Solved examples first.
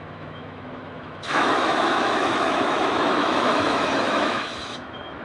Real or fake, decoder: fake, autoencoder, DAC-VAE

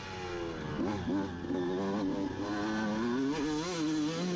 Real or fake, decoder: real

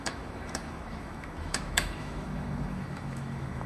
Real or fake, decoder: fake, autoencoder, DAC-VAE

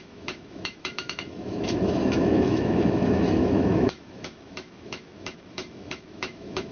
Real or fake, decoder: fake, autoencoder, DAC-VAE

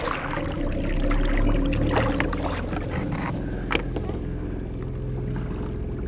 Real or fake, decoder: real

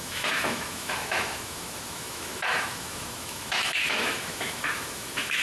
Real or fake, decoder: fake, autoencoder, DAC-VAE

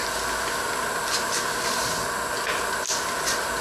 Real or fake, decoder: real